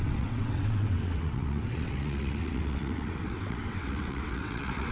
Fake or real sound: fake